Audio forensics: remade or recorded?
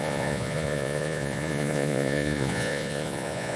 remade